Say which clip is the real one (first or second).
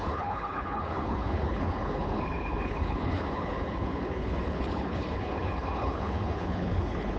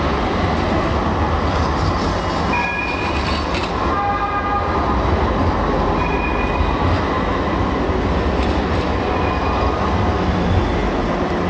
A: second